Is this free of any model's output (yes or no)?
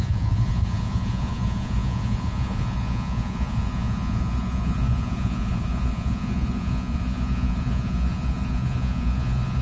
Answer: no